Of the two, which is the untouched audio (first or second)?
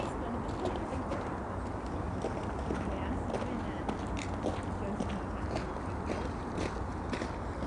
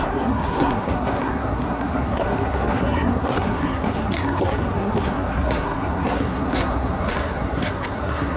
first